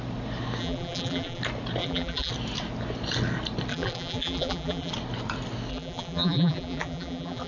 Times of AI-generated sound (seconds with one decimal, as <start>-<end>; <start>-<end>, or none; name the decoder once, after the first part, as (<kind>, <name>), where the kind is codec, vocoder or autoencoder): 0.6-1.4 (vocoder, BigVGAN v2); 1.8-2.3; 3.7-4.9; 5.7-7.5